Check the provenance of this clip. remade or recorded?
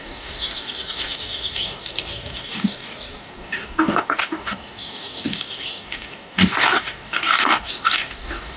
remade